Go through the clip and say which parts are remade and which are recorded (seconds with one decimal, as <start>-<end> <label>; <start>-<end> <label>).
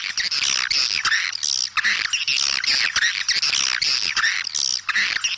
0.0-5.4 recorded